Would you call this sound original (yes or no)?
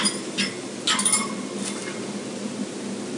yes